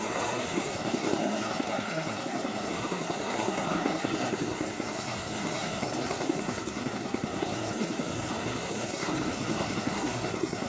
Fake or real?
fake